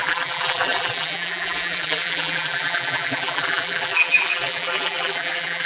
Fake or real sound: fake